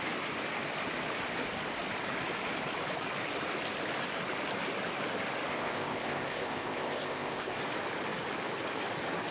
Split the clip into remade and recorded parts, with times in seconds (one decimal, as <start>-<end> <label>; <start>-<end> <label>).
0.0-5.5 recorded; 5.5-7.6 remade; 7.6-9.3 recorded